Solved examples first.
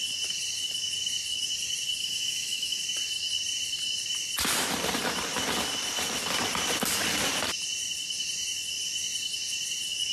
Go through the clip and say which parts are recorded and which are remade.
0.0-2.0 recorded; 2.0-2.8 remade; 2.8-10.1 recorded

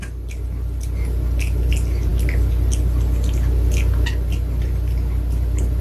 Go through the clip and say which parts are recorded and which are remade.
0.0-5.8 recorded